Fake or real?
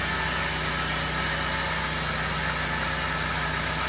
real